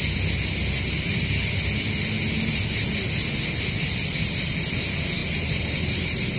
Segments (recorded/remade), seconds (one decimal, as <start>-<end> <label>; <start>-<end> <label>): 0.0-5.2 recorded; 5.2-6.4 remade

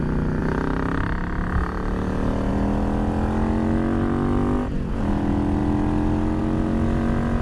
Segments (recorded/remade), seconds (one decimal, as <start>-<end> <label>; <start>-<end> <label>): 0.0-7.4 recorded

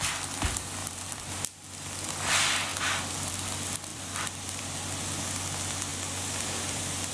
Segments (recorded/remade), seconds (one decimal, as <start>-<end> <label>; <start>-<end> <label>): 0.0-0.8 recorded; 0.8-1.3 remade; 1.3-3.9 recorded; 3.9-4.6 remade; 4.6-5.9 recorded; 5.9-7.1 remade